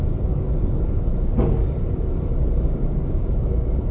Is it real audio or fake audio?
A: fake